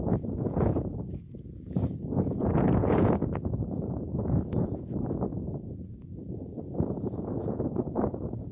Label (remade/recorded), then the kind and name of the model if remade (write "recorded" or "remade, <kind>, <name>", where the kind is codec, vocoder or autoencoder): remade, vocoder, Vocos